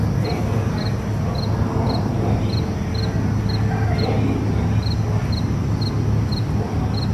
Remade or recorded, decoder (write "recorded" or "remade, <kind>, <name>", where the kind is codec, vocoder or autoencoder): recorded